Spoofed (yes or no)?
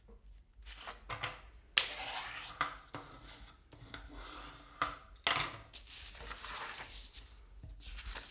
no